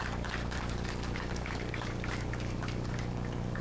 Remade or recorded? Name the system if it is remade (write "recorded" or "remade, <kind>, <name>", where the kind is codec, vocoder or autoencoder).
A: remade, codec, DAC